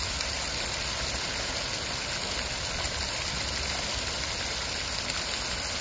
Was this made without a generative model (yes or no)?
yes